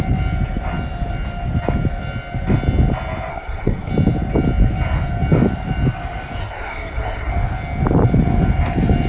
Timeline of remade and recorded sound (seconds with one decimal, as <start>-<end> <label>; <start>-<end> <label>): 0.0-3.3 recorded; 3.3-3.9 remade; 3.9-6.4 recorded; 6.4-7.3 remade; 7.3-9.1 recorded

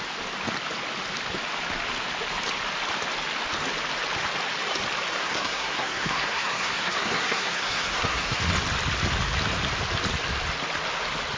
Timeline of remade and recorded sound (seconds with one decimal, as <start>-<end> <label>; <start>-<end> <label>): 0.0-5.2 recorded; 5.2-8.4 remade; 8.4-11.4 recorded

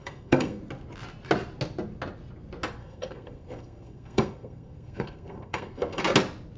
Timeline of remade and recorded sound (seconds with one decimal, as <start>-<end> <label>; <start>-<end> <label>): 0.0-0.6 remade; 0.6-2.8 recorded; 2.8-6.0 remade; 6.0-6.6 recorded

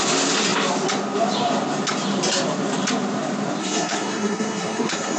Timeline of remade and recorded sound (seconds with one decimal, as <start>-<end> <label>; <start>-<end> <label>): 0.0-3.6 recorded; 3.6-5.2 remade

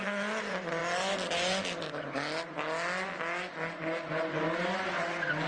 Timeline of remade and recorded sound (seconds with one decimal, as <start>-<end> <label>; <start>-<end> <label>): 0.0-5.5 recorded

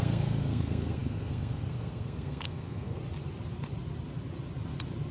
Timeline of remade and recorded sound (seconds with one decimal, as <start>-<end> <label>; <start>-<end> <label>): 0.0-3.0 remade; 3.0-5.1 recorded